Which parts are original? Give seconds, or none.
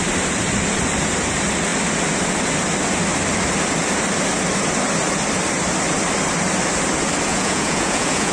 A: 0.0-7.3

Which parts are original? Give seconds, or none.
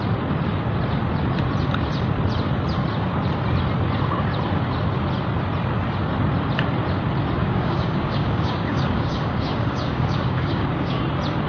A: 0.0-7.4; 11.0-11.5